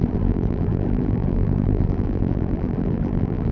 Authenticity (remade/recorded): remade